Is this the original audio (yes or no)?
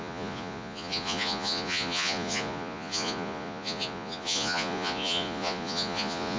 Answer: no